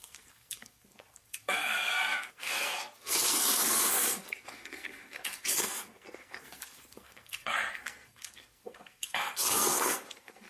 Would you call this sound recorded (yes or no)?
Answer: no